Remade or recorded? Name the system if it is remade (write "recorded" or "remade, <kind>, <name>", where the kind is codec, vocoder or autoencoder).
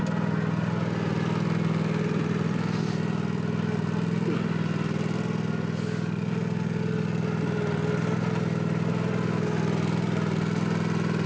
recorded